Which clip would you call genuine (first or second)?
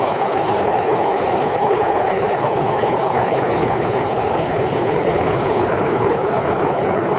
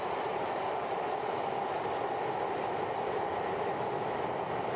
second